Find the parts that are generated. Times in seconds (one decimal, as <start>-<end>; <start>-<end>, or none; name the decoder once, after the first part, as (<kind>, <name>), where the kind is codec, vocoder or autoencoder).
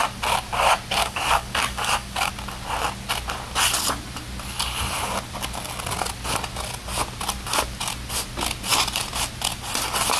1.0-2.3 (codec, DAC)